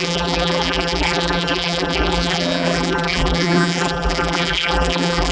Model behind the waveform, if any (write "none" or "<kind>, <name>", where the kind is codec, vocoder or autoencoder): vocoder, BigVGAN v2